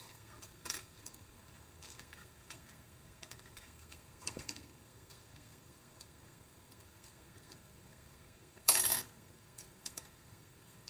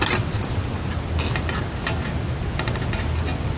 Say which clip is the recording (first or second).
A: second